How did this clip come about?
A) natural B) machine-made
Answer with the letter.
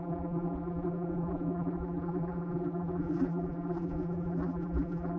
B